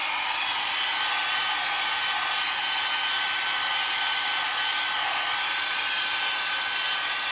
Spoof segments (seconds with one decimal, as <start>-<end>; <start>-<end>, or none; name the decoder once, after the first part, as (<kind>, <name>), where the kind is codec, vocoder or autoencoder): none